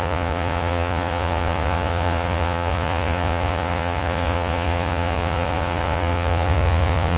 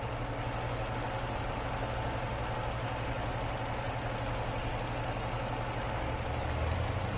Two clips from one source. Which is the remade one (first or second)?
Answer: first